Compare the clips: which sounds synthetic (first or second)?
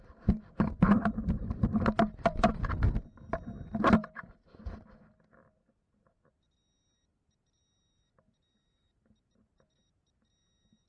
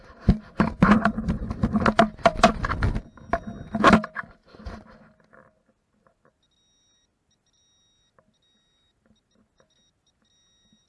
first